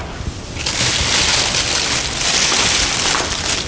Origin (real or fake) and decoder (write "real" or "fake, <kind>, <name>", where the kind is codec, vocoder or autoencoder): real